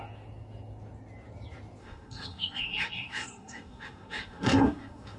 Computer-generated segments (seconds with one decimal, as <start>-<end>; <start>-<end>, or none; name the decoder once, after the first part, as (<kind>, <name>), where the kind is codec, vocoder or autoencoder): 1.8-5.2 (codec, SNAC)